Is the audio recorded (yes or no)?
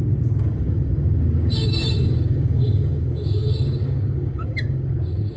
no